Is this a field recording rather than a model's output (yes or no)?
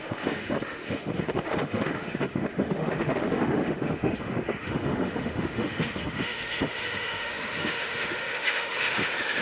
no